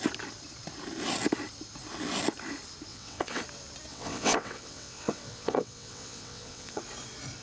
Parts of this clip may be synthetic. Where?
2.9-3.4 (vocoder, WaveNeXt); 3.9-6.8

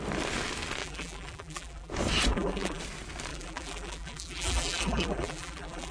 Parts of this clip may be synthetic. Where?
0.8-1.9 (vocoder, BigVGAN v2); 2.3-2.8; 3.3-5.9

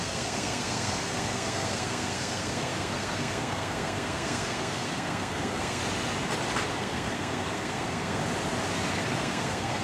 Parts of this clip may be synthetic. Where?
0.0-5.8 (codec, SNAC); 6.8-8.2; 8.9-9.8

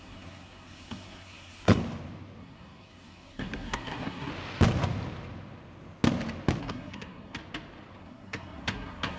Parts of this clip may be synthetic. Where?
0.0-1.8 (codec, SNAC); 2.4-4.3; 6.6-7.4; 8.0-9.2

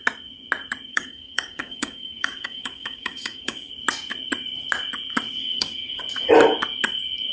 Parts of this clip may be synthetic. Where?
0.9-3.7 (codec, DAC); 5.4-6.0

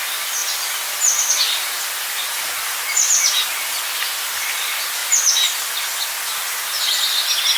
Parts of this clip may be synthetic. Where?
0.4-1.2 (vocoder, BigVGAN v2)

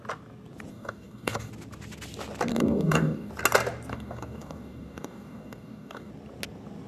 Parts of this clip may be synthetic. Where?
0.7-1.5 (codec, DAC); 2.5-3.3; 3.9-6.1